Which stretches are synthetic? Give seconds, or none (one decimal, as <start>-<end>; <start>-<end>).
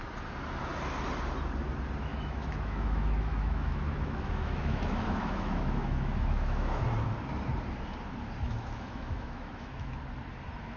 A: 2.1-6.8; 8.5-10.0